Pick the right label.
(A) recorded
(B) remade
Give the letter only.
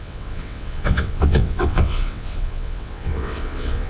B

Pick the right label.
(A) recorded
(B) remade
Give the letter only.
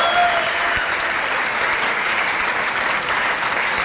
A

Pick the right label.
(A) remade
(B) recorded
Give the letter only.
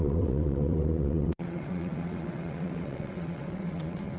A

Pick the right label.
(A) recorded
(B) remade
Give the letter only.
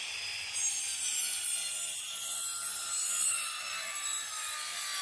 A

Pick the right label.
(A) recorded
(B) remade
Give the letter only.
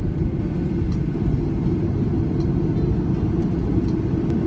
A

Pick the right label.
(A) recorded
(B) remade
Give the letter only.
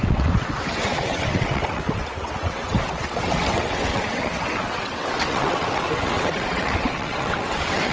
B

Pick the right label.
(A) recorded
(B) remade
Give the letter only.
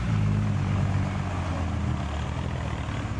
A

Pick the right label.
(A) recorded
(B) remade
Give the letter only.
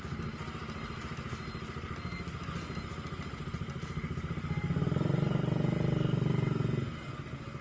A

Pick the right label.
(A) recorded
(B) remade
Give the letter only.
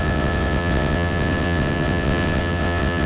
B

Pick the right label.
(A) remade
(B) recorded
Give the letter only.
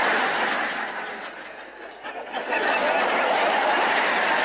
B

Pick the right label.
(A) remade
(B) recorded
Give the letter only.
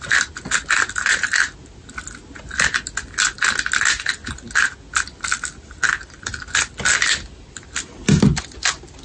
B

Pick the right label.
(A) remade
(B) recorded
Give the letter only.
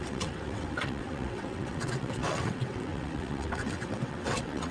A